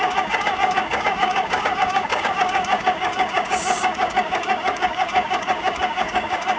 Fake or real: fake